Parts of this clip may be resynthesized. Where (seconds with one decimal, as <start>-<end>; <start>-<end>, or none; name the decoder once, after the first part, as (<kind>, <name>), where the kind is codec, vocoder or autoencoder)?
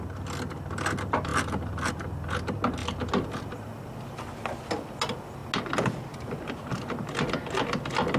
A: none